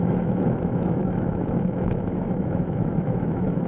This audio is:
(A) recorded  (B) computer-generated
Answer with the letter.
B